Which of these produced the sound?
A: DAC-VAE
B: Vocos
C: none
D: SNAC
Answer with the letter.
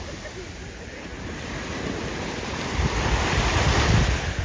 C